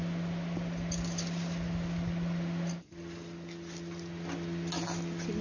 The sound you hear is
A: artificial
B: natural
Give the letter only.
B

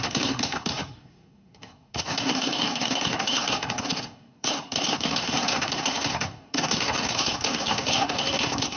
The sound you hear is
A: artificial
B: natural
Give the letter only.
A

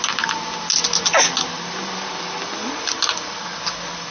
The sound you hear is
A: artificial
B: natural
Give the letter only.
B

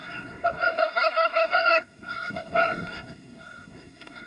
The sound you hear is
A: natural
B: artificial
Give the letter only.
B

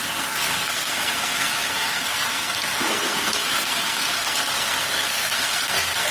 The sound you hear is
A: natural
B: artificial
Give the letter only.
B